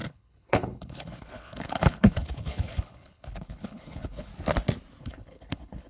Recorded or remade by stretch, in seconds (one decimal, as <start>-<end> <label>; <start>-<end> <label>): 0.0-4.3 remade; 4.3-5.0 recorded; 5.0-5.9 remade